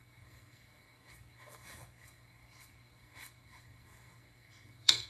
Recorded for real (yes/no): no